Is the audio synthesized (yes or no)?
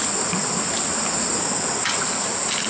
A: no